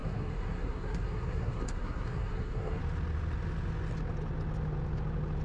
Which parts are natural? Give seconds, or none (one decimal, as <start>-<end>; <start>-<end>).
2.8-5.4